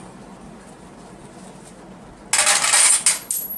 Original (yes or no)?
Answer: yes